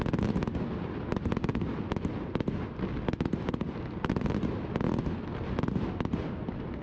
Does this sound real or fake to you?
real